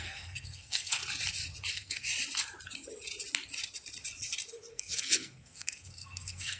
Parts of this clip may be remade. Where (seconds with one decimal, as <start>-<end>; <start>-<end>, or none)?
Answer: 0.0-1.0; 1.7-2.1; 4.7-6.6